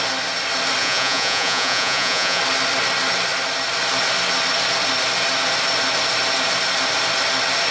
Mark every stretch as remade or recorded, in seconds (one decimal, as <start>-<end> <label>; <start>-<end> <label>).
0.0-0.8 recorded; 0.8-2.4 remade; 2.4-7.7 recorded